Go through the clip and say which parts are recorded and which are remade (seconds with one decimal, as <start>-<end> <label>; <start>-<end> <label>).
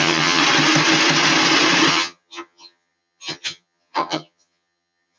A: 0.0-0.4 remade; 0.4-1.9 recorded; 1.9-5.2 remade